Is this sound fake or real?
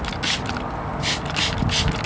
real